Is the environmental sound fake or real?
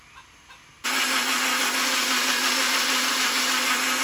real